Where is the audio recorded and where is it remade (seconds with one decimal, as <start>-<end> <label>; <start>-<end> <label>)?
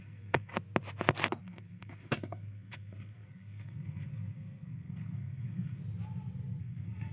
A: 0.0-0.5 remade; 0.5-1.4 recorded; 1.4-5.8 remade; 5.8-6.6 recorded; 6.6-7.1 remade